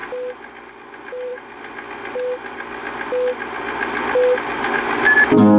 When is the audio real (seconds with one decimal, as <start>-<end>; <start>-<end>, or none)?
0.0-5.6